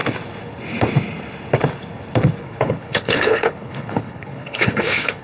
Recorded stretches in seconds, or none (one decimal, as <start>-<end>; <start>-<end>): 0.0-2.4